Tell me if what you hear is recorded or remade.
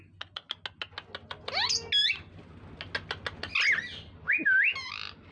recorded